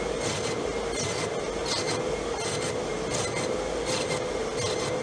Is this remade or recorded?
recorded